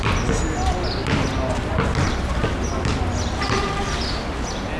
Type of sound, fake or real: real